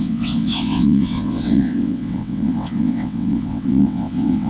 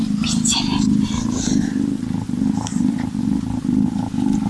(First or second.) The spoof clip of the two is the first